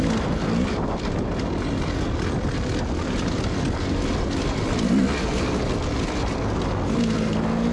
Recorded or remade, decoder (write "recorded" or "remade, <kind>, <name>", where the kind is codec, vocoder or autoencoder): recorded